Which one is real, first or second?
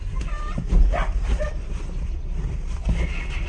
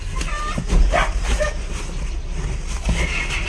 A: second